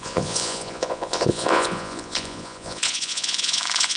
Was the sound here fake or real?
fake